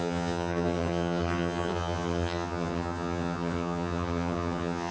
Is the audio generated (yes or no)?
yes